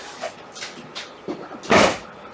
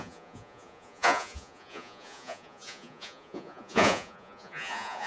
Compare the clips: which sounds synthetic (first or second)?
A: second